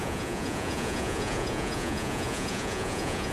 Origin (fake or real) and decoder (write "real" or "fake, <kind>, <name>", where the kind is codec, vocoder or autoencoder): fake, vocoder, Vocos